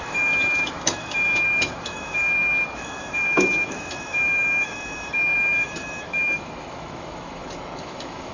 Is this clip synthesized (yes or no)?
yes